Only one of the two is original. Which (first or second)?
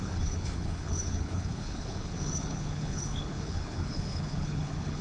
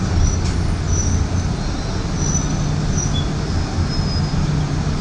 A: second